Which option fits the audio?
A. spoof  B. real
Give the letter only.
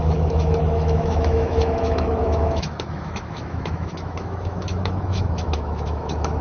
A